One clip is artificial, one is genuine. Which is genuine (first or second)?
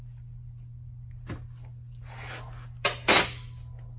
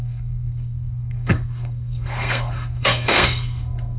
first